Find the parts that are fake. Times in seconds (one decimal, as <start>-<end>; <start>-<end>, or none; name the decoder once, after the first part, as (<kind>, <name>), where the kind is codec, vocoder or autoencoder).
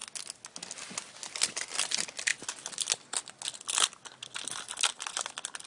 none